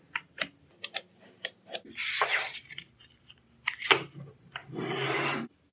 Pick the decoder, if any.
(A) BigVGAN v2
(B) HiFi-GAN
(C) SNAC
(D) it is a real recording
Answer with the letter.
A